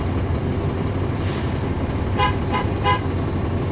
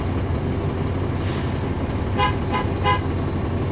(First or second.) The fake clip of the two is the first